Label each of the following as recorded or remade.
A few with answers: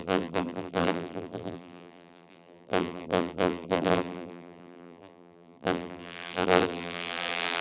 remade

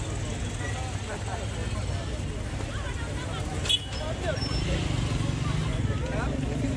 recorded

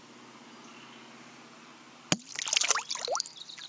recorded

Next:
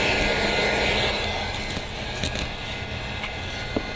recorded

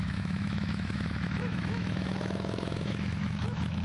remade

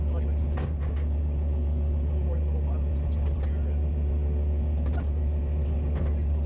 recorded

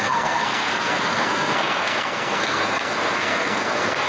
remade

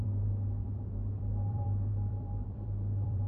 remade